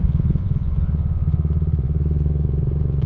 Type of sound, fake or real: fake